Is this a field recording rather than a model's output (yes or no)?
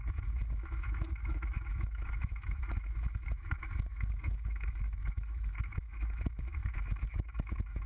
no